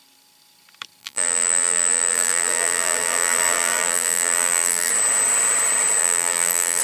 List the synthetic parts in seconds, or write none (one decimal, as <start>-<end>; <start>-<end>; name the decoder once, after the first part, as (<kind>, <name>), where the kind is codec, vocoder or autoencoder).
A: 1.0-4.9 (vocoder, BigVGAN v2); 6.0-6.8